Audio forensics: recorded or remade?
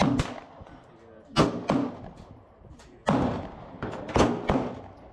recorded